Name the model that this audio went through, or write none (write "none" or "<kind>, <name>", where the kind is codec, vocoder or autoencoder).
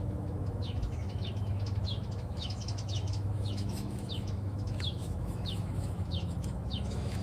autoencoder, DAC-VAE